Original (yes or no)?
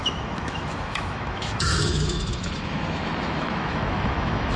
no